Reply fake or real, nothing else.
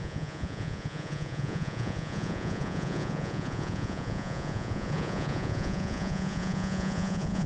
fake